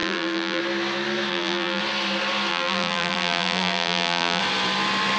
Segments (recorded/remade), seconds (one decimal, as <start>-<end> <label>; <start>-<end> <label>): 0.0-0.6 remade; 0.6-1.3 recorded; 1.3-1.8 remade; 1.8-2.5 recorded; 2.5-4.4 remade; 4.4-5.2 recorded